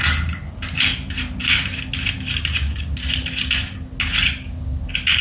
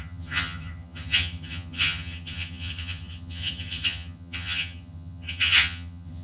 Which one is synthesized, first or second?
second